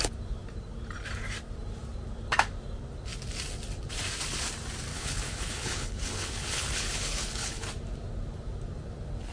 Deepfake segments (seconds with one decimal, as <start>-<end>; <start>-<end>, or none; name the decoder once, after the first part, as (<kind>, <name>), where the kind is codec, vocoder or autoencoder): 4.9-7.7 (codec, HILCodec)